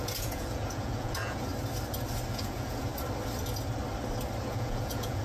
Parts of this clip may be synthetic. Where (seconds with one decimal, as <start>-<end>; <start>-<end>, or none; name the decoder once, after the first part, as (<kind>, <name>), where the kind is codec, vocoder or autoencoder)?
0.0-1.5 (vocoder, Vocos); 2.3-2.9; 4.4-5.2

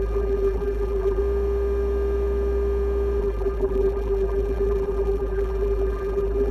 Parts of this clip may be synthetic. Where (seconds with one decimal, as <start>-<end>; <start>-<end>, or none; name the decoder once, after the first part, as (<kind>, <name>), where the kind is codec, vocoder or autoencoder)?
0.0-1.2 (vocoder, BigVGAN v2); 3.2-6.5

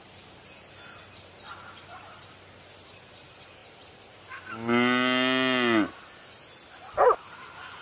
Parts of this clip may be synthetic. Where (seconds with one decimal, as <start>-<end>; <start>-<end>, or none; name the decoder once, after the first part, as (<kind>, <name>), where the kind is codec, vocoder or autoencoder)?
none

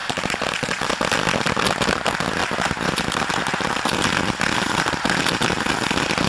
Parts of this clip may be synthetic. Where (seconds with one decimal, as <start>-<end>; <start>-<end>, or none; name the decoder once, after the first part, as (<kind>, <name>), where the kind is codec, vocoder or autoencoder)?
0.0-0.9 (vocoder, BigVGAN v2); 2.4-4.0

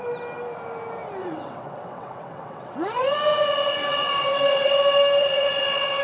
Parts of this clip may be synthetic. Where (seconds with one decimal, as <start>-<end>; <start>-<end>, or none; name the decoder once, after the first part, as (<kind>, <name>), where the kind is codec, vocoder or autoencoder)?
1.2-4.8 (vocoder, WaveNeXt); 5.2-6.0